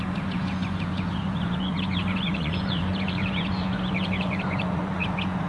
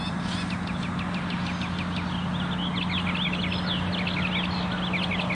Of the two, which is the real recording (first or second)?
second